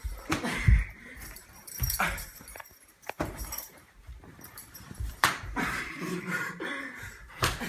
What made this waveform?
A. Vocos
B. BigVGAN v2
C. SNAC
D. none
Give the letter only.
B